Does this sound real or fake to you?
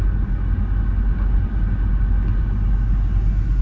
real